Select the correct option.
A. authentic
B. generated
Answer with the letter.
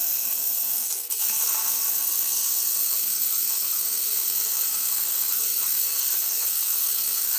B